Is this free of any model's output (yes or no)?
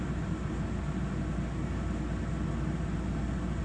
yes